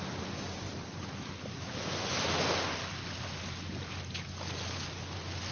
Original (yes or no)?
yes